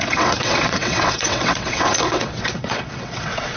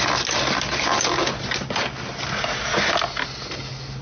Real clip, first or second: second